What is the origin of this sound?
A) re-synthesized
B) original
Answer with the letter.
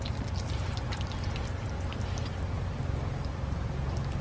B